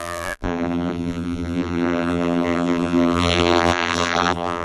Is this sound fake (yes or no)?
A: yes